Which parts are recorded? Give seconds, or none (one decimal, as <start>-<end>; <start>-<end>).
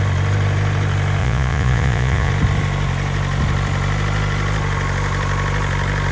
0.0-1.2; 2.3-6.1